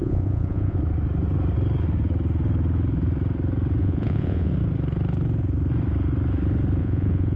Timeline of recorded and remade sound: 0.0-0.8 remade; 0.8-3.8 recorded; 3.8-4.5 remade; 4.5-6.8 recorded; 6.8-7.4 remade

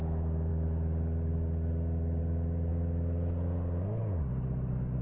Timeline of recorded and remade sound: 0.0-5.0 recorded